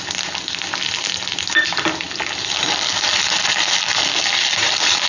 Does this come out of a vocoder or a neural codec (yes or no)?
no